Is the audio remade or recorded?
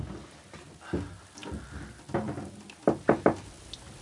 recorded